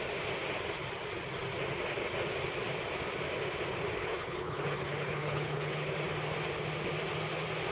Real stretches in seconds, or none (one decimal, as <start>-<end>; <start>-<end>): 0.0-4.0; 5.9-7.7